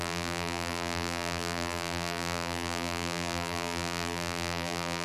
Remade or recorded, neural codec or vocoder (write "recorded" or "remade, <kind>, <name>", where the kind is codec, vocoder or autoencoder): remade, vocoder, BigVGAN v2